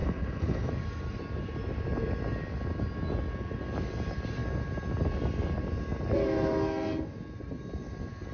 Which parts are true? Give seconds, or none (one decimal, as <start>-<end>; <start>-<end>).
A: 0.7-8.3